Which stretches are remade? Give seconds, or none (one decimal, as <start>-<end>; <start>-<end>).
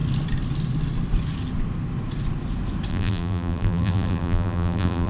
2.9-5.1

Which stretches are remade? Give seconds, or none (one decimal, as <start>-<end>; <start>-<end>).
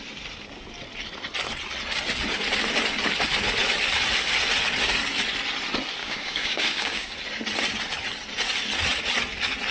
6.0-7.1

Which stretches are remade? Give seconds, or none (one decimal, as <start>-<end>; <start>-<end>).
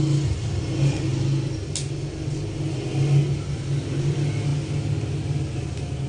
none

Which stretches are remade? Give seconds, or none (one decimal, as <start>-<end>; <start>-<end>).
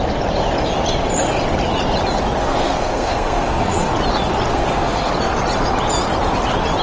2.4-3.9; 4.5-5.1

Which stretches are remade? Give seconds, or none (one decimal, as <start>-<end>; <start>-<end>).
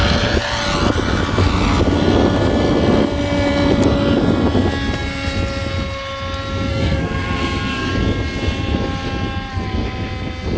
6.7-7.9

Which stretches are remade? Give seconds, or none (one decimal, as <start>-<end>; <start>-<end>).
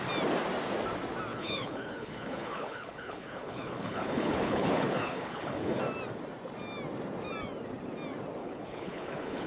1.3-5.8; 8.4-9.5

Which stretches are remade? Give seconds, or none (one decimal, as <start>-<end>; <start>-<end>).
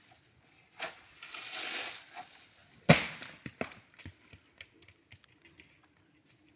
none